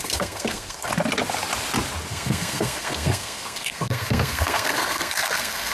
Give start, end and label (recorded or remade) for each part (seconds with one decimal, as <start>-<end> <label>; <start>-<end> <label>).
0.0-0.9 remade; 0.9-2.1 recorded; 2.1-5.7 remade